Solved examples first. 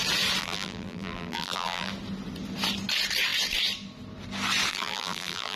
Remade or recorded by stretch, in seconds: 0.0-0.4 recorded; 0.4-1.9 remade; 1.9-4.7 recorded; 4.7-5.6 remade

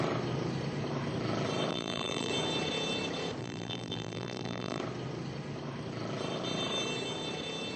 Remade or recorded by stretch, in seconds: 0.0-1.7 recorded; 1.7-2.3 remade; 2.3-3.4 recorded; 3.4-4.8 remade; 4.8-7.8 recorded

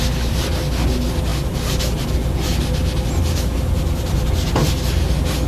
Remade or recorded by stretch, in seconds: 0.0-1.3 recorded; 1.3-2.6 remade; 2.6-5.5 recorded

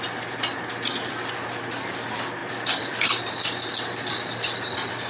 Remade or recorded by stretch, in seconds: 0.0-2.4 recorded; 2.4-3.2 remade; 3.2-5.1 recorded

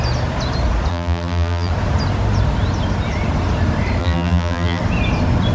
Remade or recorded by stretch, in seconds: 0.0-0.9 recorded; 0.9-1.7 remade; 1.7-4.0 recorded; 4.0-4.8 remade; 4.8-5.5 recorded